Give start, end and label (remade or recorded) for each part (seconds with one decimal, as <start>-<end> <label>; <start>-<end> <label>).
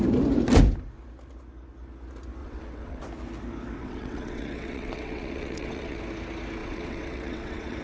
0.0-2.4 recorded; 2.4-3.0 remade; 3.0-3.8 recorded; 3.8-6.0 remade; 6.0-6.6 recorded; 6.6-7.8 remade